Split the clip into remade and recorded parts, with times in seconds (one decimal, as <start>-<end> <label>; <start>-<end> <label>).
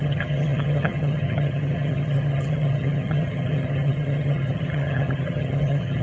0.0-6.0 remade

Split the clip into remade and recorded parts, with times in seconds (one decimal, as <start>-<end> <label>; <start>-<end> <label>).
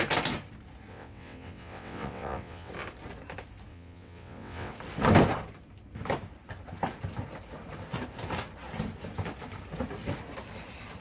0.0-0.9 recorded; 0.9-2.7 remade; 2.7-3.7 recorded; 3.7-4.7 remade; 4.7-11.0 recorded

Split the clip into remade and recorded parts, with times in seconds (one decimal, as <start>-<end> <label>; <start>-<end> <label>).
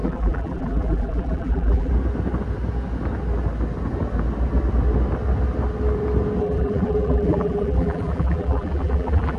0.0-1.9 remade; 1.9-6.4 recorded; 6.4-9.4 remade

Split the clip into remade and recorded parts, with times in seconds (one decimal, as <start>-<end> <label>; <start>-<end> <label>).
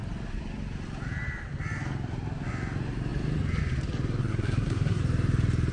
0.0-4.2 recorded; 4.2-5.0 remade; 5.0-5.7 recorded